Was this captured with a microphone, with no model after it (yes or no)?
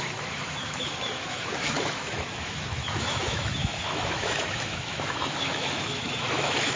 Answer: no